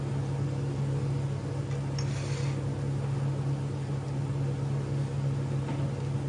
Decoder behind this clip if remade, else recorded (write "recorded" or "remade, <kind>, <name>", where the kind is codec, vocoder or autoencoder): recorded